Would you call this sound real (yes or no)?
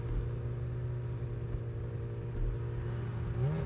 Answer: yes